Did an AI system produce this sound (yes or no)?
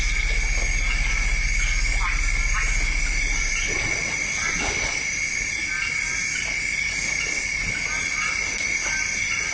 no